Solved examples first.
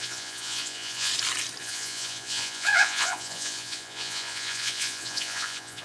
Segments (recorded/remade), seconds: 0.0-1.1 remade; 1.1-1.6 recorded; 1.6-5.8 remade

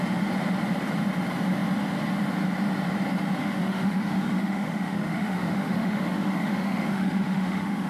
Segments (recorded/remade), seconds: 0.0-3.4 recorded; 3.4-7.9 remade

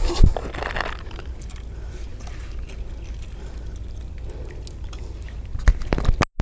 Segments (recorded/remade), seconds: 0.0-6.4 recorded

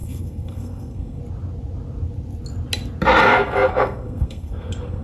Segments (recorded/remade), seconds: 0.0-1.2 remade; 1.2-3.2 recorded; 3.2-5.0 remade

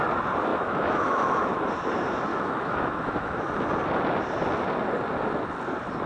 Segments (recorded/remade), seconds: 0.0-0.5 recorded; 0.5-1.7 remade; 1.7-2.3 recorded; 2.3-3.4 remade; 3.4-6.1 recorded